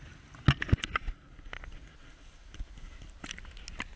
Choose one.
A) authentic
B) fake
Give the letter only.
A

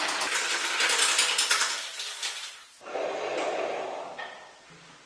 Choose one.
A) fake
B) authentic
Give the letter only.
B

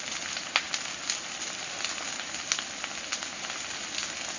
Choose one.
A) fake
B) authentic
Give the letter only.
B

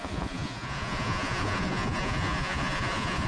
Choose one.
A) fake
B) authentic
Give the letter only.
A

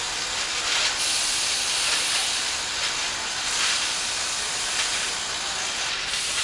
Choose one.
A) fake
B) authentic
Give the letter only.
B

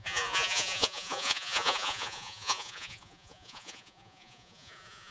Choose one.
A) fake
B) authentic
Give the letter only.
A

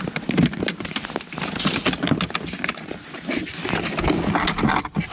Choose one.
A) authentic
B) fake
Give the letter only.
A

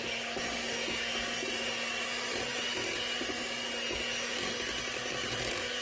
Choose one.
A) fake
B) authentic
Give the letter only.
B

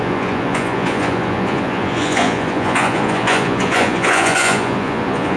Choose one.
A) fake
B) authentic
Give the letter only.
A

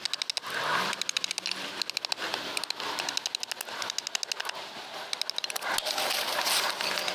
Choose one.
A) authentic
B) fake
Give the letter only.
A